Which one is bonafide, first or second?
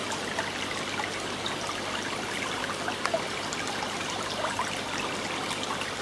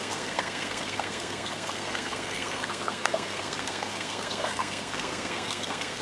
first